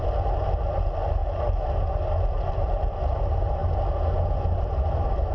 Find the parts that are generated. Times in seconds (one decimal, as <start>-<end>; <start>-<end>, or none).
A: none